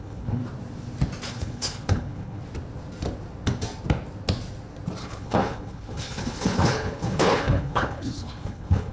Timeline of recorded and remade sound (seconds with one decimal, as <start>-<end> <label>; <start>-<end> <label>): 0.0-0.4 remade; 0.4-1.3 recorded; 1.3-2.4 remade; 2.4-5.0 recorded; 5.0-8.9 remade